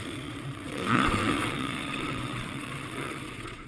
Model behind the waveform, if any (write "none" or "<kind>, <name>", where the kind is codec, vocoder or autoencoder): vocoder, WaveNeXt